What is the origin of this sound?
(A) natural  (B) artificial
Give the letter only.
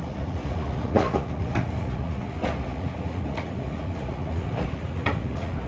B